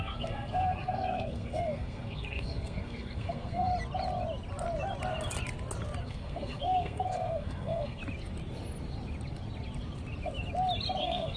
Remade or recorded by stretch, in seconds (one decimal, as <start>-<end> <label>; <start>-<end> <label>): 0.0-3.7 remade; 3.7-6.0 recorded; 6.0-8.0 remade; 8.0-11.0 recorded; 11.0-11.4 remade